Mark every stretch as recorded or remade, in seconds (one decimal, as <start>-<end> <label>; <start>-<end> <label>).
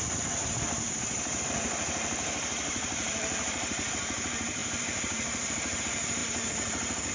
0.0-7.1 remade